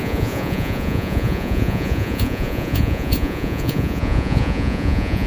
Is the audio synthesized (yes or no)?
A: yes